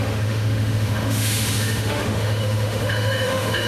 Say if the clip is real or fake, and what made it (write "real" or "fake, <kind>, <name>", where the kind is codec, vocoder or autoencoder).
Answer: fake, autoencoder, DAC-VAE